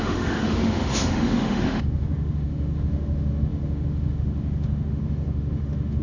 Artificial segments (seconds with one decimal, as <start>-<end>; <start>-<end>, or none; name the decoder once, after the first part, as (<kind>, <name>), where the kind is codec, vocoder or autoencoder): 0.0-6.0 (autoencoder, DAC-VAE)